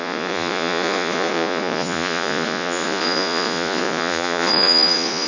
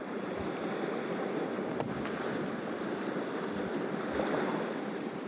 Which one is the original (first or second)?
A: second